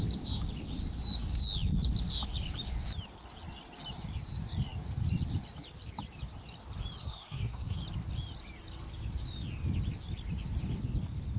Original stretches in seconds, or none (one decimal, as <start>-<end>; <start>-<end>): 0.0-7.0; 7.8-11.4